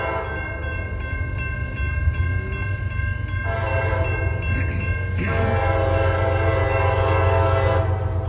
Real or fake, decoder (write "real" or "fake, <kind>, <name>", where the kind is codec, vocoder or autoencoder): real